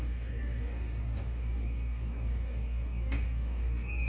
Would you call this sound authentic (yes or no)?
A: no